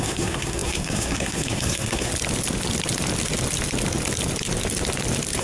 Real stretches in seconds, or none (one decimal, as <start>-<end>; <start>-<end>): 2.1-5.4